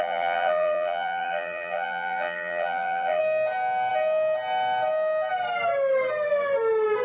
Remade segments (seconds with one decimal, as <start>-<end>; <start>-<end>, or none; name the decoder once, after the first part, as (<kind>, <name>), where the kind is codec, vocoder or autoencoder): 0.0-3.2 (vocoder, BigVGAN v2)